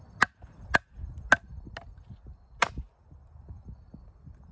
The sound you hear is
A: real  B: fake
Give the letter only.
A